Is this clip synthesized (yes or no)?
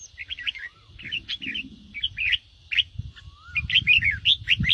no